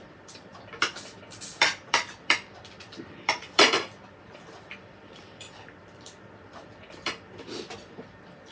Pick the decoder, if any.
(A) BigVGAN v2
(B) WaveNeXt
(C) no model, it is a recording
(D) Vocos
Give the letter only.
A